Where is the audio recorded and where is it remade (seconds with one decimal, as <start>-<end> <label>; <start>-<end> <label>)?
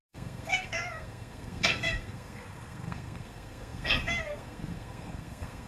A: 0.0-5.7 remade